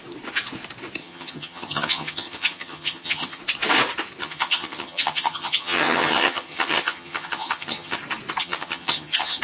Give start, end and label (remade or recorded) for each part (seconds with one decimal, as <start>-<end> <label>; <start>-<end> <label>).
0.0-1.0 recorded; 1.0-3.4 remade; 3.4-4.2 recorded; 4.2-8.0 remade; 8.0-8.4 recorded; 8.4-9.4 remade

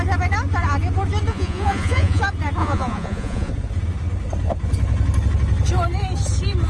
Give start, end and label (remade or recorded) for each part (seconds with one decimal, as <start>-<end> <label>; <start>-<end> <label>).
0.0-1.3 recorded; 1.3-2.2 remade; 2.2-2.6 recorded; 2.6-3.5 remade; 3.5-6.7 recorded